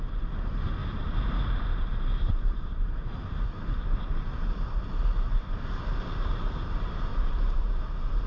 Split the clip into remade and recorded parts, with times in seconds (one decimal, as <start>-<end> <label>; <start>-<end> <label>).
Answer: 0.0-0.8 recorded; 0.8-4.0 remade; 4.0-7.1 recorded; 7.1-7.8 remade; 7.8-8.3 recorded